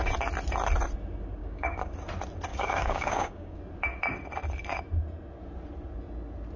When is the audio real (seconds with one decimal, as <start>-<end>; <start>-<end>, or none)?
0.0-1.4; 1.9-2.5; 3.6-6.6